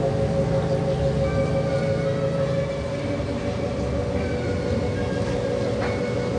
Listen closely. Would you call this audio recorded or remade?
recorded